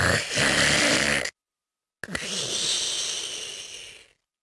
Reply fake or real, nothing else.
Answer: real